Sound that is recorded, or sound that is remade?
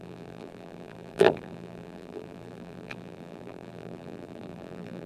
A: remade